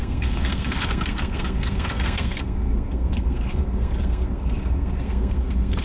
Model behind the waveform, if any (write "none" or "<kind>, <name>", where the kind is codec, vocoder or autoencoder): codec, SNAC